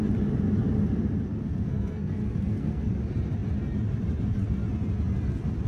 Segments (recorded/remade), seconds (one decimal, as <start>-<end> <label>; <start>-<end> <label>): 0.0-1.3 recorded; 1.3-2.9 remade; 2.9-5.7 recorded